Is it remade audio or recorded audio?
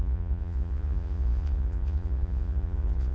remade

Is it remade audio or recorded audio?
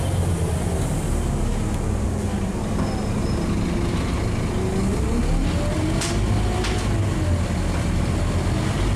recorded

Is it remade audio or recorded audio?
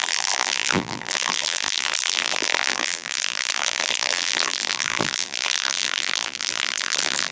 remade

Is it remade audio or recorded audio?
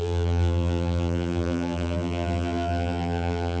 remade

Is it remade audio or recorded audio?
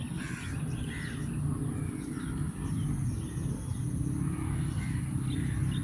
recorded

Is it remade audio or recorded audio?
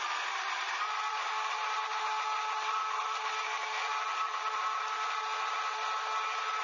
recorded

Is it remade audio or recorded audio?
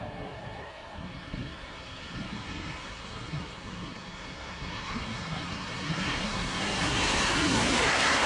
remade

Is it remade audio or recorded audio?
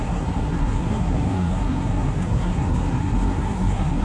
remade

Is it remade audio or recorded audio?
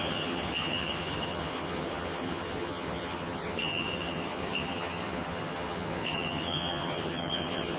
remade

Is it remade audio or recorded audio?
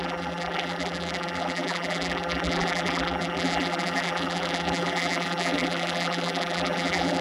remade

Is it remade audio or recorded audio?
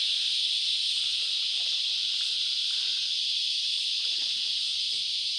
recorded